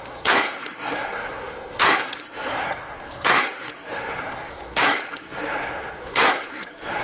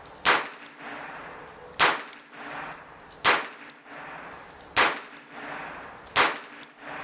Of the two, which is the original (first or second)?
second